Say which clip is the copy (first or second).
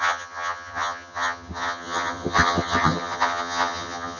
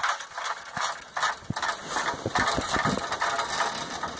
first